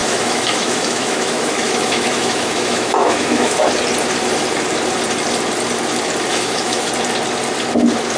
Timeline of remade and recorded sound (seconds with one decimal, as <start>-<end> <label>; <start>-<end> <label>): 0.0-3.7 remade; 3.7-6.3 recorded; 6.3-6.9 remade; 6.9-8.2 recorded